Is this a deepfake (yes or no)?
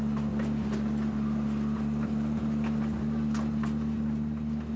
no